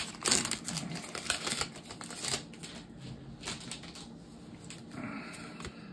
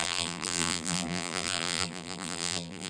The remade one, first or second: second